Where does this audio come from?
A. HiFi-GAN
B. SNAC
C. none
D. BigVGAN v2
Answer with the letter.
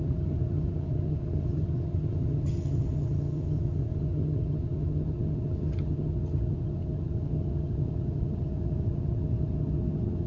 A